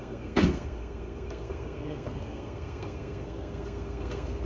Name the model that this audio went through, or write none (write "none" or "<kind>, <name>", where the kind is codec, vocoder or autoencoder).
codec, SNAC